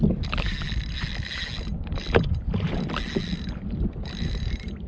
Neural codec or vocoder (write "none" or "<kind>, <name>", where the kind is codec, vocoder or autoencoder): none